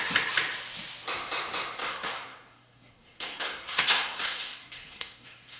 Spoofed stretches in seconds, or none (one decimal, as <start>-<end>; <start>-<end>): 1.8-5.6